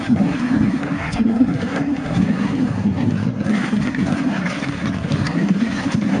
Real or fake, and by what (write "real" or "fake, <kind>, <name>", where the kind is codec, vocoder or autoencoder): fake, codec, SNAC